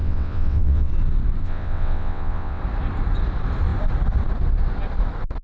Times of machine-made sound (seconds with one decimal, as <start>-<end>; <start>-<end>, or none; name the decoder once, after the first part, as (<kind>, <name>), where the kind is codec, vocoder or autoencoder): 0.0-0.9 (vocoder, WaveNeXt); 1.4-2.6